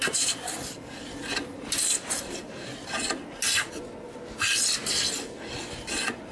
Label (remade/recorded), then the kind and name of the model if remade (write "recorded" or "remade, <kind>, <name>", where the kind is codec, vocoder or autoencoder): recorded